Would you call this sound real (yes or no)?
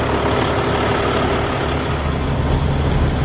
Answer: yes